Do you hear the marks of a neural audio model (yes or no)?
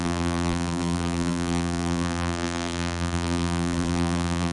yes